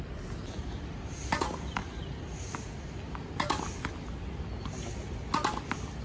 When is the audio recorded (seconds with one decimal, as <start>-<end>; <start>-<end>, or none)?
0.0-6.0